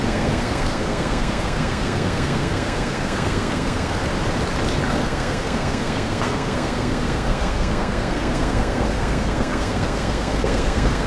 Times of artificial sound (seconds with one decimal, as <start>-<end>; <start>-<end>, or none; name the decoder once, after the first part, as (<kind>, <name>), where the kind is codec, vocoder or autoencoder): 0.0-4.0 (codec, SNAC); 4.9-11.1